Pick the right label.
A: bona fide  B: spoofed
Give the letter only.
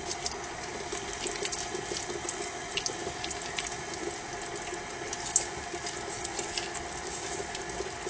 A